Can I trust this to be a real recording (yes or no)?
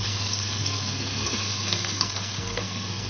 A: no